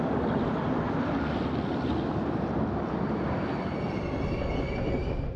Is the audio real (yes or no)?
yes